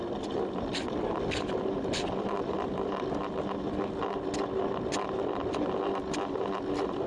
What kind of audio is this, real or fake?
real